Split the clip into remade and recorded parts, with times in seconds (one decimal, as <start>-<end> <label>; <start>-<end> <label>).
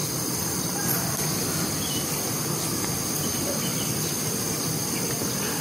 0.0-5.6 recorded